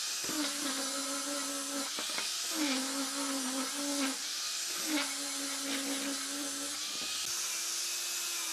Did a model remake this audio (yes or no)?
no